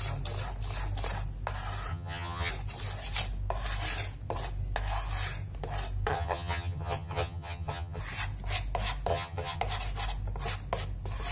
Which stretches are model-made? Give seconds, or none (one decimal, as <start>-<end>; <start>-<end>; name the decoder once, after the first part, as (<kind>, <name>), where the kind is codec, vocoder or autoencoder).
1.9-2.5 (vocoder, HiFi-GAN); 6.1-8.0; 9.1-9.6